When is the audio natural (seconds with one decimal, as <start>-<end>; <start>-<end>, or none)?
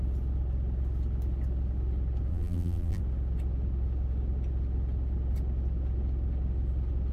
0.0-2.3; 3.0-7.1